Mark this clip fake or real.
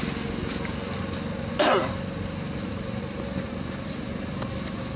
real